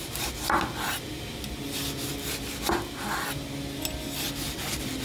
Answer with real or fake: real